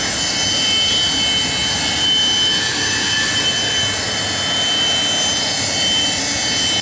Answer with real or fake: real